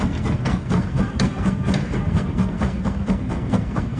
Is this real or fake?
fake